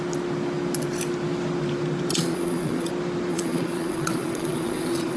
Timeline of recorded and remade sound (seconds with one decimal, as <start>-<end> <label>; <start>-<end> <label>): 0.0-2.1 recorded; 2.1-2.9 remade; 2.9-3.3 recorded; 3.3-5.2 remade